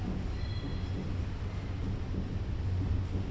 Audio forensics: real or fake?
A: real